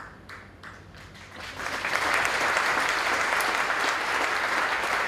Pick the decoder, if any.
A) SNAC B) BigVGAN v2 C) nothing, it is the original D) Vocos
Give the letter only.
C